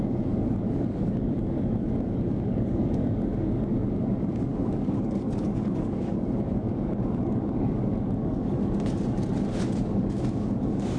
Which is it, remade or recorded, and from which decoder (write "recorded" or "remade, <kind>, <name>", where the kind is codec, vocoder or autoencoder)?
remade, codec, DAC